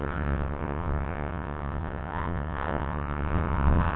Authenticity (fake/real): fake